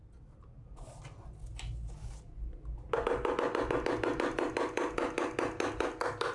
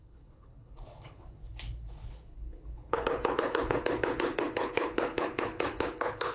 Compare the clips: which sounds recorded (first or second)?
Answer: first